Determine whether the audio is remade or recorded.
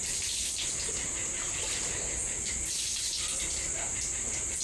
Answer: recorded